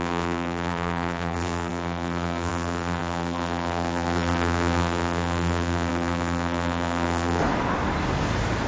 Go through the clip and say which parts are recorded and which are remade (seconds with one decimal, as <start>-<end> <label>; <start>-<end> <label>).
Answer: 0.0-7.4 remade; 7.4-8.7 recorded